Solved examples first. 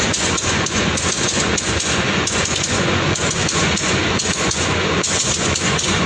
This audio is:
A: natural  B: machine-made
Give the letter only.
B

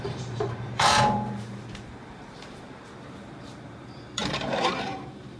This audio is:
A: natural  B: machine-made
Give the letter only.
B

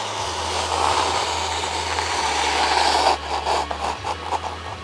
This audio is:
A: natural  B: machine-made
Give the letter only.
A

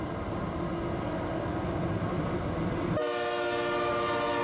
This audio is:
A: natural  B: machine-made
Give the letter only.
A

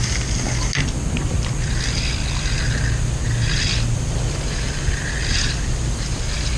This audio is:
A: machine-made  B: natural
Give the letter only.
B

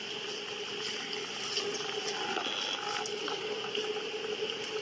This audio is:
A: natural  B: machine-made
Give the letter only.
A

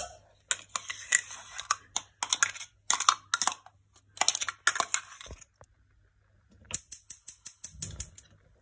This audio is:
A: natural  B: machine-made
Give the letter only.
A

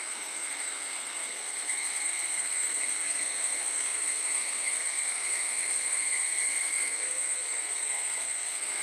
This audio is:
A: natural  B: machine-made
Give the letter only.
B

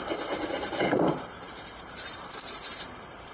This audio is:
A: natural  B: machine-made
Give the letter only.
B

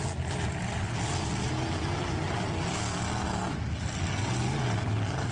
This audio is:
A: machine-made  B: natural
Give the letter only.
B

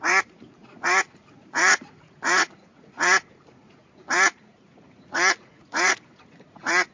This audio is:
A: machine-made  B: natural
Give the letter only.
A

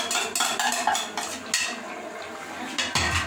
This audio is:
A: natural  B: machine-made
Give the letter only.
A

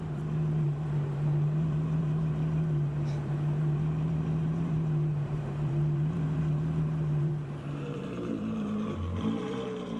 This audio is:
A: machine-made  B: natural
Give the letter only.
A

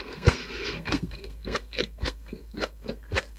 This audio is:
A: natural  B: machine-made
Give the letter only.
B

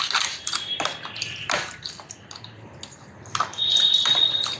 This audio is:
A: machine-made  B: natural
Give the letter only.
B